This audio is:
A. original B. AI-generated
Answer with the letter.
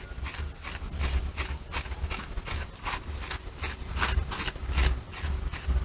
A